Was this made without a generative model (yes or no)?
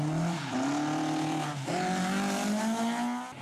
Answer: yes